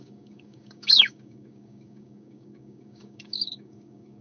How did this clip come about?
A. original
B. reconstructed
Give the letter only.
B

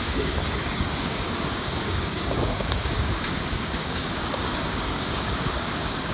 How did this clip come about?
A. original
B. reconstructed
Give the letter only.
B